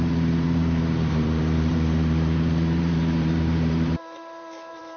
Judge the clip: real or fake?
fake